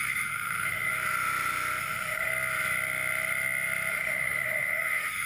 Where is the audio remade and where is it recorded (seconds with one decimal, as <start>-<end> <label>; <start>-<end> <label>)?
0.0-0.9 remade; 0.9-1.8 recorded; 1.8-2.3 remade; 2.3-3.9 recorded; 3.9-5.3 remade